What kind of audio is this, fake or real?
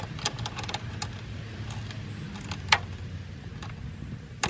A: real